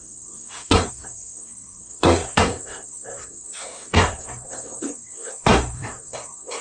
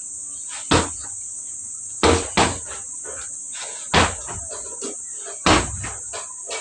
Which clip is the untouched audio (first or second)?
second